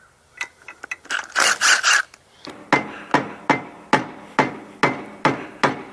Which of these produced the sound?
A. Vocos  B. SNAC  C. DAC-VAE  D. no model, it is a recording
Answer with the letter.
D